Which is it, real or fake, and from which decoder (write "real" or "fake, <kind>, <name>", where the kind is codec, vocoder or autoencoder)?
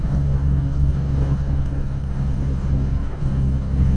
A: fake, codec, DAC